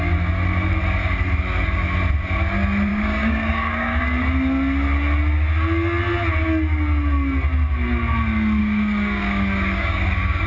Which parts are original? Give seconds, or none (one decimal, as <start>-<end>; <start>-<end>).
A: 0.0-2.9; 4.0-8.6